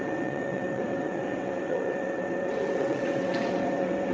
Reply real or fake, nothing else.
fake